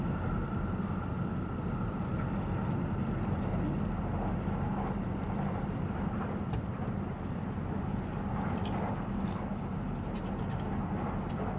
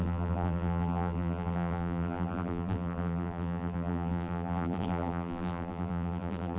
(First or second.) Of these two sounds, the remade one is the second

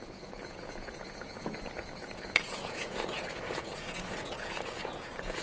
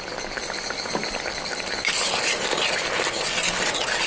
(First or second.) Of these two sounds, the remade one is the first